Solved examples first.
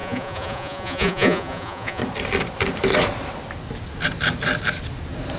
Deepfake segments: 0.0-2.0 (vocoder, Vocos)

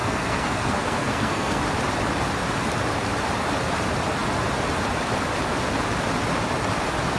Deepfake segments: 0.0-1.6 (codec, SNAC)

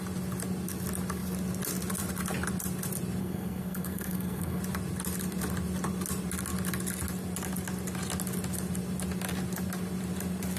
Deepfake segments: 3.2-4.6 (codec, SNAC)

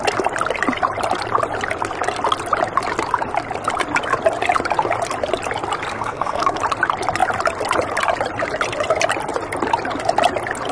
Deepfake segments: 5.9-6.6 (codec, SNAC)

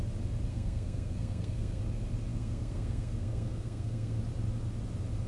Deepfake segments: 0.5-1.8 (codec, SNAC); 2.3-4.2

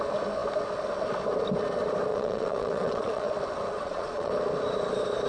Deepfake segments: 2.1-3.3 (vocoder, Vocos); 3.7-4.3

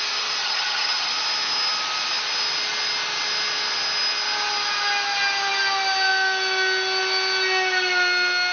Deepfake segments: 0.4-1.1 (vocoder, HiFi-GAN)

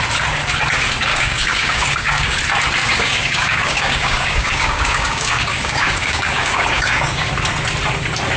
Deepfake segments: 1.1-2.4 (codec, DAC); 2.8-7.3